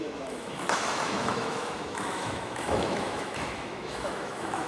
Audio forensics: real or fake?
fake